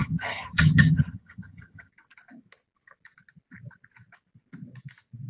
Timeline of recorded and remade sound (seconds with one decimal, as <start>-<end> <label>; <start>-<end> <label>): 0.0-1.9 remade; 1.9-5.3 recorded